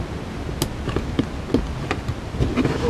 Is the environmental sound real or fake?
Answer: real